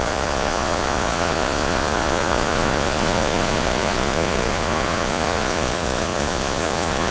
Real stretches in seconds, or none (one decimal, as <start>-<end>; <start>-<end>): none

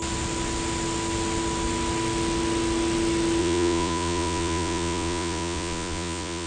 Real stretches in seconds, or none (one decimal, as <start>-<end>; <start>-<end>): 0.0-3.4

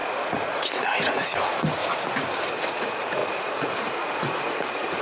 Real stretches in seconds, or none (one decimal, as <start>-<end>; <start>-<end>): 1.8-2.4

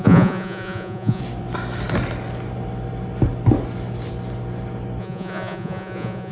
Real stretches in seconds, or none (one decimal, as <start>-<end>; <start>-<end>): 1.2-5.0

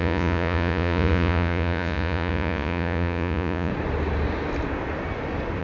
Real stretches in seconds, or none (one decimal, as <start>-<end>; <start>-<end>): 3.7-5.6

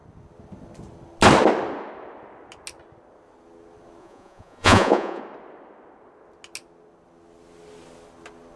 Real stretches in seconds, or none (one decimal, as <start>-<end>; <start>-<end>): 0.0-4.0; 5.2-8.6

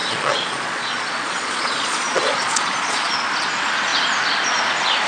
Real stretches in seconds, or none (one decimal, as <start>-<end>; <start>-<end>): 3.1-5.1